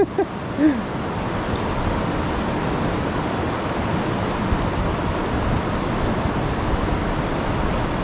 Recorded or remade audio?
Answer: recorded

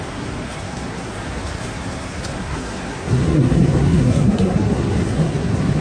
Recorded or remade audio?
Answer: remade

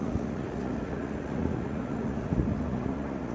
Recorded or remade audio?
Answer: remade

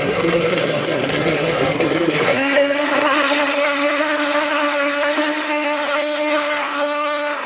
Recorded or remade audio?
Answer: remade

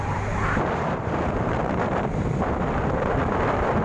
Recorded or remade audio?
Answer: remade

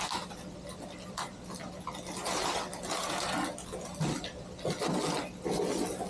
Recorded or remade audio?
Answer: recorded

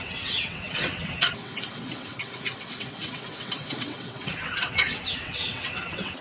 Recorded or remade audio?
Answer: remade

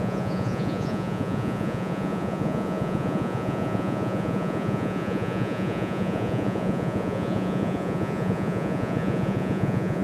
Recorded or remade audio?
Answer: remade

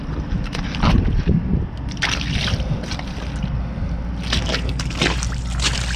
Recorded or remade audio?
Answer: recorded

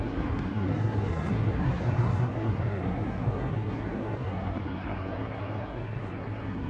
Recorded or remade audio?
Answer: remade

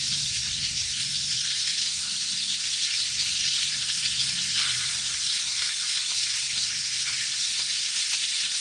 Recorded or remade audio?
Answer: remade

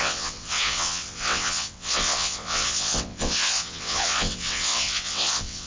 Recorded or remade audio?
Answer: remade